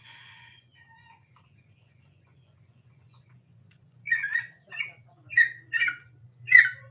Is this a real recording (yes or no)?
no